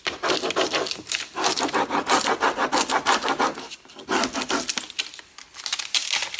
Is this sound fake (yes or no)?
no